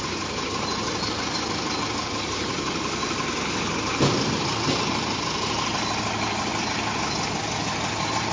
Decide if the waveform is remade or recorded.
recorded